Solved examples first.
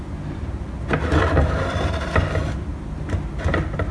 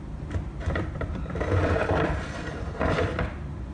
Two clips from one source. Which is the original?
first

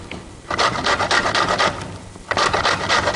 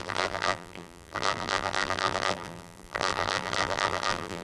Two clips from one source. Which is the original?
first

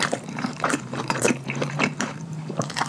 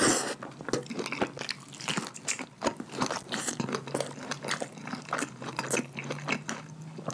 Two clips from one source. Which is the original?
second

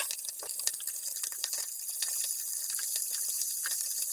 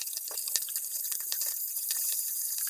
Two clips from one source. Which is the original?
first